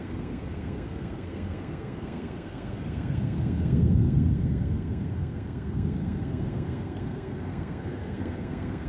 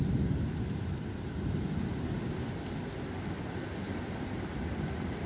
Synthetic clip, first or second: first